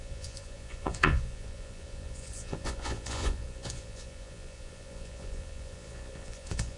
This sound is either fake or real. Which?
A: fake